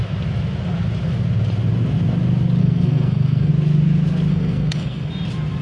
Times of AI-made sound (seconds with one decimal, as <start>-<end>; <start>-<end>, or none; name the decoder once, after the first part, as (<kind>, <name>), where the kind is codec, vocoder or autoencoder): 2.6-3.5 (codec, SNAC); 4.3-5.1